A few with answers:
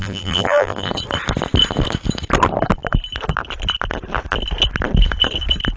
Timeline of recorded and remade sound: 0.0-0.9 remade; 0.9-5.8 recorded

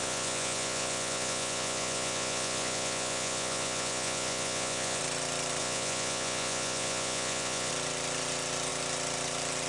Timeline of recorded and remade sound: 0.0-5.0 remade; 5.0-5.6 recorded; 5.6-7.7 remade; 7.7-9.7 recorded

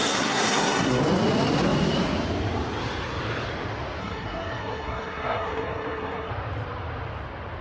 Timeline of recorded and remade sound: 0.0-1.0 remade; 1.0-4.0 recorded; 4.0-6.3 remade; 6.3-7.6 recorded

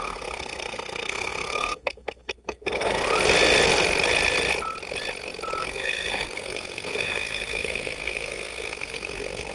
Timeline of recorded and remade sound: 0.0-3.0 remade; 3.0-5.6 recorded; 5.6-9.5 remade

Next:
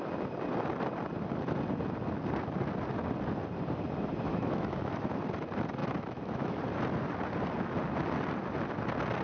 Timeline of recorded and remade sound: 0.0-4.3 recorded; 4.3-5.2 remade; 5.2-5.8 recorded; 5.8-6.6 remade; 6.6-9.2 recorded